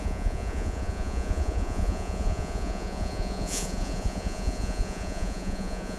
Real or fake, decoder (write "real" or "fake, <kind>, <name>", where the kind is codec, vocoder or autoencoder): fake, vocoder, Vocos